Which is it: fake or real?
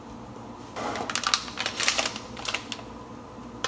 real